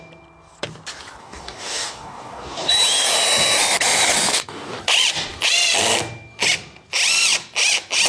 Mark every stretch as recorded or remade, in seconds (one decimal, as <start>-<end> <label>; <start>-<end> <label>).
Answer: 0.0-1.2 recorded; 1.2-2.7 remade; 2.7-4.3 recorded; 4.3-4.8 remade; 4.8-8.1 recorded